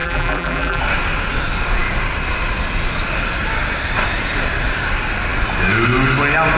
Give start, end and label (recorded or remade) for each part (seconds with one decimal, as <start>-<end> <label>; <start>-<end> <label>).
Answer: 0.0-0.8 remade; 0.8-6.6 recorded